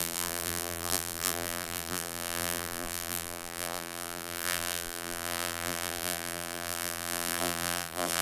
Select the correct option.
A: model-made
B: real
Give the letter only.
A